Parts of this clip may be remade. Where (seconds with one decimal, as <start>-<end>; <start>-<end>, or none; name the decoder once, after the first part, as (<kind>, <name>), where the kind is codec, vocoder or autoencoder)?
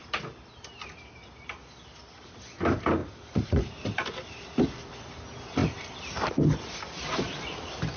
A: 3.0-3.6 (vocoder, Vocos)